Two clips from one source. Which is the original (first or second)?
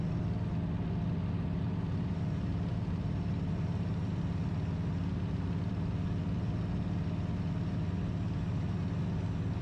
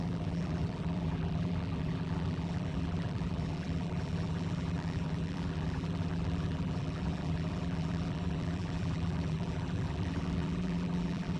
first